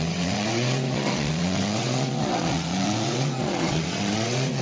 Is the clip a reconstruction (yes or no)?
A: yes